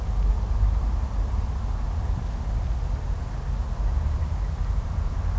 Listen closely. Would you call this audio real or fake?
real